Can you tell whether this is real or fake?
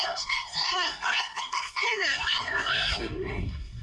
fake